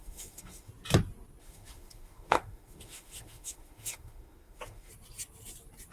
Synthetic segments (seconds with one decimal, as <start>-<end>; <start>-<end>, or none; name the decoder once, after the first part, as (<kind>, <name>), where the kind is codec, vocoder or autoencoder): 0.0-0.7 (autoencoder, DAC-VAE); 1.4-4.9